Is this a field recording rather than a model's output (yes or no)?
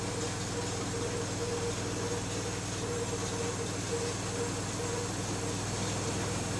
yes